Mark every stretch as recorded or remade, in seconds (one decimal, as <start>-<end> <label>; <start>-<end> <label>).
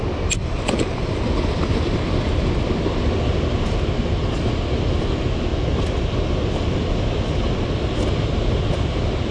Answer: 0.0-9.3 recorded